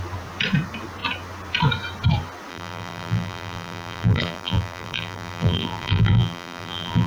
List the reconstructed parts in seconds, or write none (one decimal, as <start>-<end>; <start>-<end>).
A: 2.5-7.1